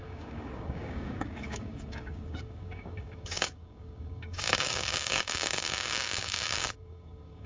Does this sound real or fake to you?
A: fake